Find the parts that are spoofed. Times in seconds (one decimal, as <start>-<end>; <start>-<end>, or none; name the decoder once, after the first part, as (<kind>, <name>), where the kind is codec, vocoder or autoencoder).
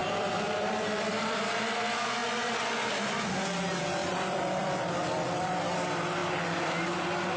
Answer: 0.0-1.4 (vocoder, BigVGAN v2); 2.2-3.3; 4.0-5.6